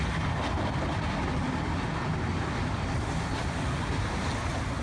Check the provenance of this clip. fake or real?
real